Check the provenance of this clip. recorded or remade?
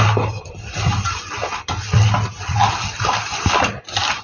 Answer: recorded